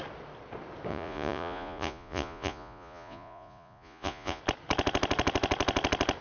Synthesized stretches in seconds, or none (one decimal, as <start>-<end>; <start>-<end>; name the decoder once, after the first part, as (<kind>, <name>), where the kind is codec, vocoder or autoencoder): 0.9-4.4 (vocoder, Vocos)